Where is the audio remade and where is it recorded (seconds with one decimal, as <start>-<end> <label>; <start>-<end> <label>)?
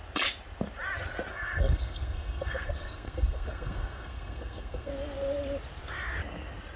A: 0.0-1.3 recorded; 1.3-4.9 remade; 4.9-6.8 recorded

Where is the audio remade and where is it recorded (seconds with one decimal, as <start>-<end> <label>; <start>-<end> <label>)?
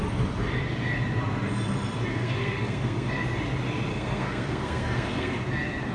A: 0.0-2.1 recorded; 2.1-3.1 remade; 3.1-3.9 recorded; 3.9-5.4 remade; 5.4-5.9 recorded